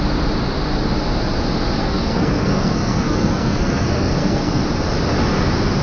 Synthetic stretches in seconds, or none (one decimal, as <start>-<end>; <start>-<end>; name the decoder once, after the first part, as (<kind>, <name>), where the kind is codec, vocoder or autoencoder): 1.8-4.6 (codec, SNAC)